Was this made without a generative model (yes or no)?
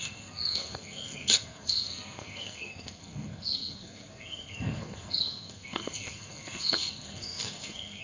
no